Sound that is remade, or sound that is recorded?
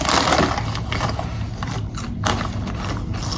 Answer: recorded